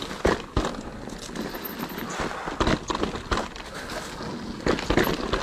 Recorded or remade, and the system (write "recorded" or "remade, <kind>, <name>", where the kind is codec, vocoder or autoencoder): recorded